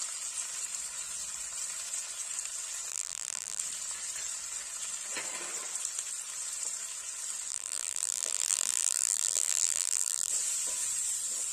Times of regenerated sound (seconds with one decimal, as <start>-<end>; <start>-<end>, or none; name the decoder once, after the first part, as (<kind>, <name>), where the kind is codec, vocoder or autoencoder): 2.9-3.6 (vocoder, BigVGAN v2); 7.5-10.3